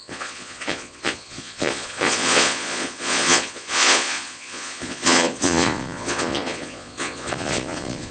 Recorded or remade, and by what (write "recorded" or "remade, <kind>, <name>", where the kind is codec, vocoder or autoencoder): remade, vocoder, Vocos